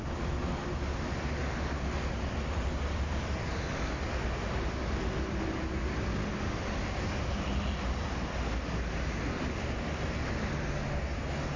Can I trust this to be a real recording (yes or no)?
yes